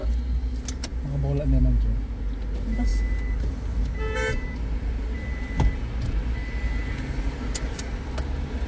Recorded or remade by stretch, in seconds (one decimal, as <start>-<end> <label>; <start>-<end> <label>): 0.0-8.7 recorded